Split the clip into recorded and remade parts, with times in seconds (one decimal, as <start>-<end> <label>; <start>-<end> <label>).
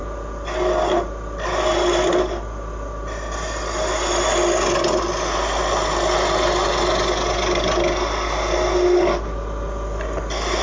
0.0-10.6 recorded